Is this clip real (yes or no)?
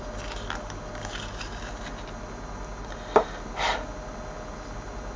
yes